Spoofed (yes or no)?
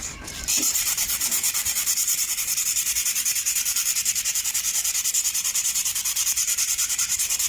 yes